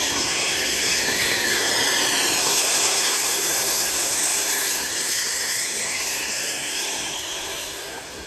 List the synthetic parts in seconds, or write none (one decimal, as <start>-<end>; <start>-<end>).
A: 0.0-1.7; 2.4-8.3